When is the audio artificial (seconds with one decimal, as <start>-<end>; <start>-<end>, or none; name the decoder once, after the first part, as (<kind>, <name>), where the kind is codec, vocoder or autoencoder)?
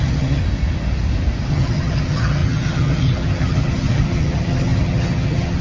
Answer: 0.0-0.4 (vocoder, HiFi-GAN); 1.5-5.6